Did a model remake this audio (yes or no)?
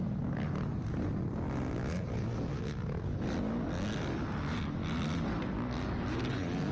no